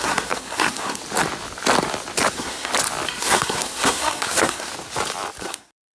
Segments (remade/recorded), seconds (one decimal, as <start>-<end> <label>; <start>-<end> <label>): 0.0-1.0 remade; 1.0-2.3 recorded; 2.3-2.7 remade; 2.7-3.2 recorded; 3.2-4.7 remade; 4.7-5.4 recorded; 5.4-5.9 remade